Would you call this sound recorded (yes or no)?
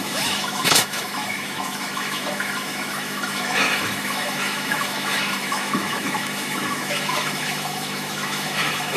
no